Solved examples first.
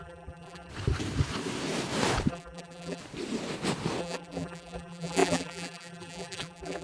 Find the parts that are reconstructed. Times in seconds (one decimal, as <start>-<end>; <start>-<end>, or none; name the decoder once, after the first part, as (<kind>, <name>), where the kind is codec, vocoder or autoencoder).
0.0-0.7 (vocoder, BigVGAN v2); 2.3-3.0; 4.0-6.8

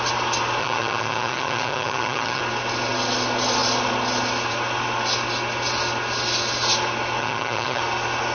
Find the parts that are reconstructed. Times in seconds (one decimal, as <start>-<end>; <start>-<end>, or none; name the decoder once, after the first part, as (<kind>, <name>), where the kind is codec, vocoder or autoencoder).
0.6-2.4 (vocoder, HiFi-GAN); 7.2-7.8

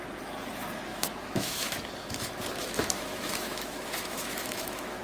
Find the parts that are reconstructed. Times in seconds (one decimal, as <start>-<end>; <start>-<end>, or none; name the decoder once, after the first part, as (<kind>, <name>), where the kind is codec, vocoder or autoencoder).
0.9-1.8 (autoencoder, DAC-VAE); 2.6-5.0

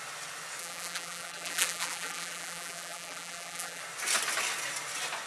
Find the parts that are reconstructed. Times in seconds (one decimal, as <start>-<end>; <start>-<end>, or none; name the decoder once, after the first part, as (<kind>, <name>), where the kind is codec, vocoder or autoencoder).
0.6-3.8 (vocoder, BigVGAN v2)